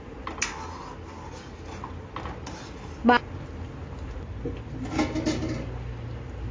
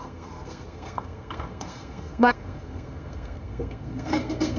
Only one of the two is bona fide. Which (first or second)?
first